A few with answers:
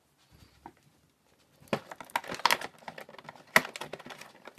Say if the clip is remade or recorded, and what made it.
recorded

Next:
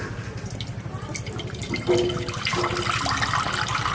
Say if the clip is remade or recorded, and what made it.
recorded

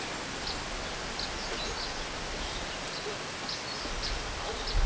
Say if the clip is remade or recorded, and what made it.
recorded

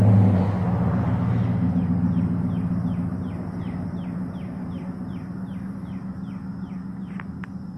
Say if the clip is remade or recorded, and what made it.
recorded